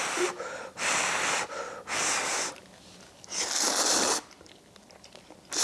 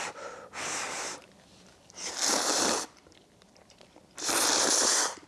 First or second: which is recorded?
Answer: first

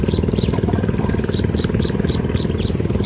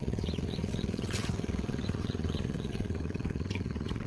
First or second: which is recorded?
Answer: first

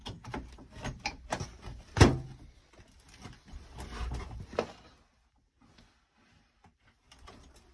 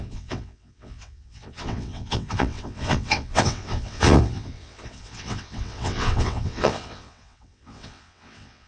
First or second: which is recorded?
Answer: first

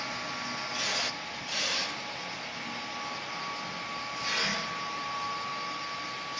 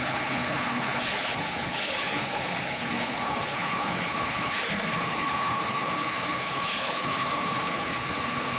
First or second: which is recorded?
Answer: first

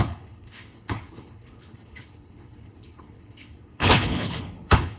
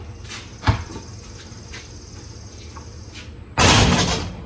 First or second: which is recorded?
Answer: second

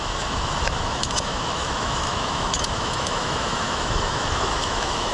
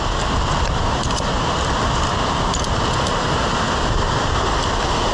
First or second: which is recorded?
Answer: second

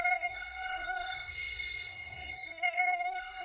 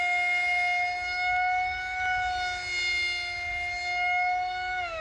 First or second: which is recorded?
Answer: second